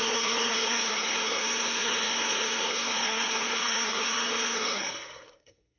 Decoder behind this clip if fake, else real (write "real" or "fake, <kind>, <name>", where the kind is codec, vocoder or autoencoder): fake, codec, SNAC